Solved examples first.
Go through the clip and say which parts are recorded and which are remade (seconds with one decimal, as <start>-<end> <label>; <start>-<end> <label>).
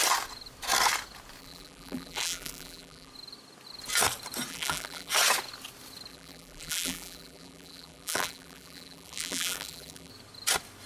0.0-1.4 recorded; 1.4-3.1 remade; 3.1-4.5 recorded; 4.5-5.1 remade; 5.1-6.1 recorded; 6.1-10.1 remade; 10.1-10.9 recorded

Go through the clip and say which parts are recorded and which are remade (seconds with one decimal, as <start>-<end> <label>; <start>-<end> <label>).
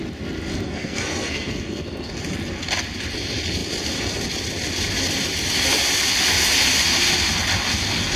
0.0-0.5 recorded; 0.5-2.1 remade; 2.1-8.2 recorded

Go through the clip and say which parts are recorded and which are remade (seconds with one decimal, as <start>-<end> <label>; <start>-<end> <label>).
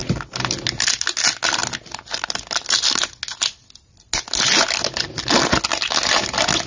0.0-6.7 recorded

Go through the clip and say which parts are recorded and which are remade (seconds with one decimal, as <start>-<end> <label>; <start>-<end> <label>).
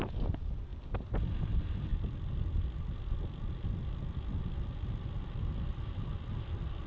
0.0-6.9 recorded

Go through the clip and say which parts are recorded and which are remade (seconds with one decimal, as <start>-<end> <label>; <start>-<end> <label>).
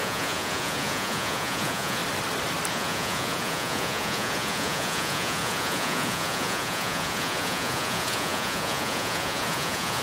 0.0-2.0 remade; 2.0-2.7 recorded; 2.7-10.0 remade